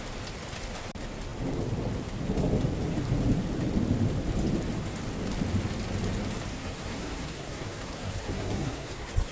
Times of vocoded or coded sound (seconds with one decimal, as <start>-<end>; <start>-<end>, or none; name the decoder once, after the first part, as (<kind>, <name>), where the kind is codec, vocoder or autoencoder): 6.5-9.3 (codec, SNAC)